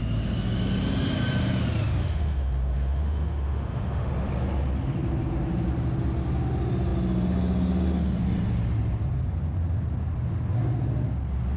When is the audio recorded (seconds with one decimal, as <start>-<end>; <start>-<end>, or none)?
0.0-2.0; 4.1-11.6